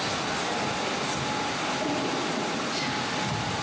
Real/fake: real